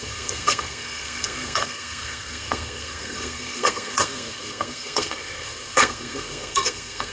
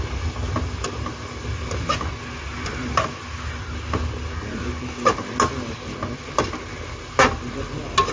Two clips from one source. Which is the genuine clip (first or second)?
second